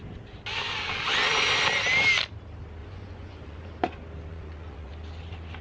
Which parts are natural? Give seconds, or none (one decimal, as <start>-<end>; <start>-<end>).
0.0-2.8; 3.7-4.3; 4.9-5.6